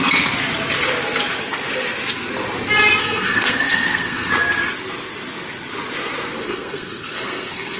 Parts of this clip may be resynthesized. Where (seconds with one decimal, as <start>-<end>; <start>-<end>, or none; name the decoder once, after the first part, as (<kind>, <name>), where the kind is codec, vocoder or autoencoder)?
3.0-4.3 (codec, SNAC); 6.4-7.8